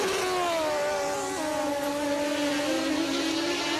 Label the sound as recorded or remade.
recorded